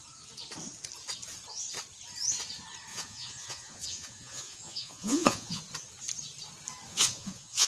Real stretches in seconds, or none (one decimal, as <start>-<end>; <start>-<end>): 0.0-2.9; 5.6-6.9

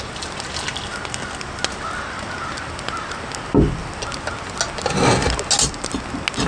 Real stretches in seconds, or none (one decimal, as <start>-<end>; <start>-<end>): 0.0-6.5

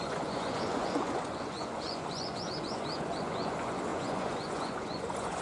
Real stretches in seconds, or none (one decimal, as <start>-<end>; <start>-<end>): none

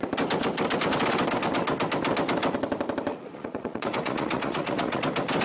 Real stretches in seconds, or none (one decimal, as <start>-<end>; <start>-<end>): 0.0-3.1; 5.0-5.4

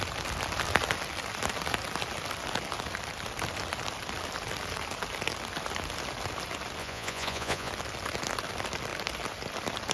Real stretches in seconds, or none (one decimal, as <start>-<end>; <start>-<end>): 0.0-6.8; 7.7-9.9

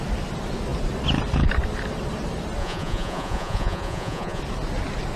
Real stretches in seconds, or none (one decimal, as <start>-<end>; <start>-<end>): 0.0-2.6; 4.4-5.2

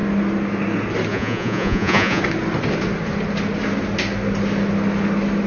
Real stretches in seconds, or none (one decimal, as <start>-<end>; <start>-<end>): 0.0-1.1; 2.2-5.5